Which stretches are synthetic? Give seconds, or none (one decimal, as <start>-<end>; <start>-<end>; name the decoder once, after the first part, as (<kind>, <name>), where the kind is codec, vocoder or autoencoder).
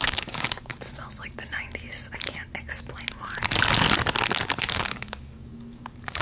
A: 0.0-0.7 (codec, DAC); 4.4-6.2